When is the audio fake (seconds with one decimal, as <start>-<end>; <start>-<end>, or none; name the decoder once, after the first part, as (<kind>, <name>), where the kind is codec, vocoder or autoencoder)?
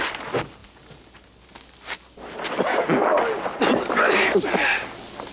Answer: none